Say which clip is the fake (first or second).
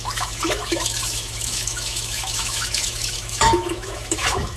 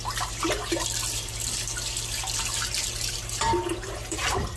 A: first